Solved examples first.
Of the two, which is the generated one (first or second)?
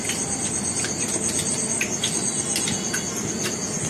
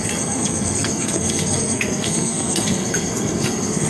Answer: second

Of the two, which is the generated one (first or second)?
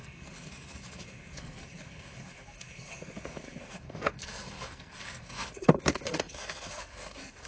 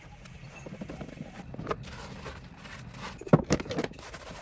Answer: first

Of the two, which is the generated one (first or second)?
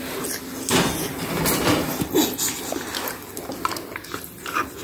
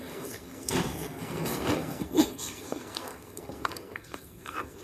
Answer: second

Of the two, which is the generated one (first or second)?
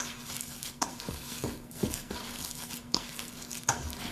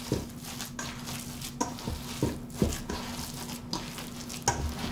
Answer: first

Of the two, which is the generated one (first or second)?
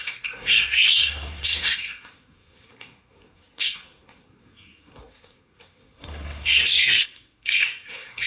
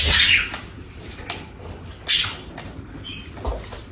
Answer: first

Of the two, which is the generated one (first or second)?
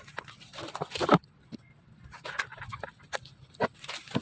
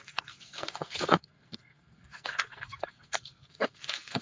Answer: second